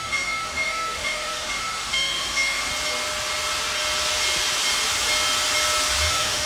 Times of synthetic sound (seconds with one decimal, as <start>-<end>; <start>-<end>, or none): 0.0-2.7; 6.1-6.5